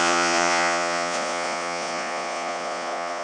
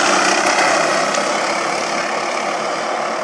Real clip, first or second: second